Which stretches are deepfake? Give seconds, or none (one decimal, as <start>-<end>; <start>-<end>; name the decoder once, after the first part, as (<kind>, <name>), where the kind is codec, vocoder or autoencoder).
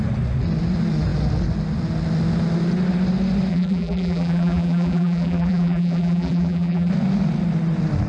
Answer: 3.5-6.9 (vocoder, BigVGAN v2)